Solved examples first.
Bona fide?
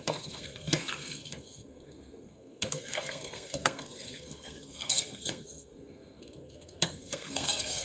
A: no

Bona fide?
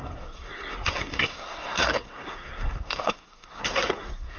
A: no